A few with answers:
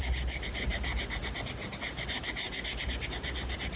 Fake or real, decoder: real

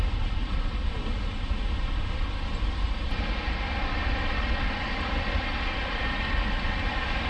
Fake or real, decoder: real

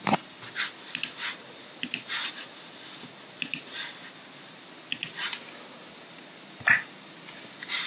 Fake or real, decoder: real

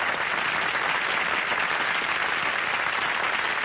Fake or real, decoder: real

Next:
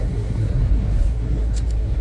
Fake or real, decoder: fake, codec, SNAC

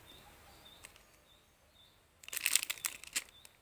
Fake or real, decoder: real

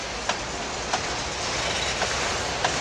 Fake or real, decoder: real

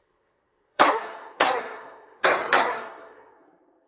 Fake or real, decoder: fake, codec, SNAC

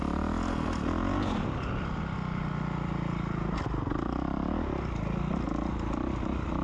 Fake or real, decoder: real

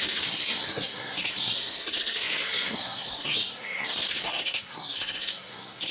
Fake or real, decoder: fake, codec, SNAC